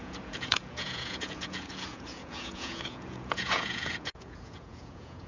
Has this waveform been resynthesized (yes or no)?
yes